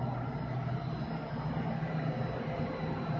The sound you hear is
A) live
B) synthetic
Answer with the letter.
A